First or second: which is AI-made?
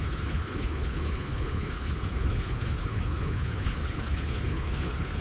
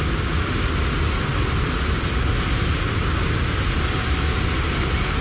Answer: first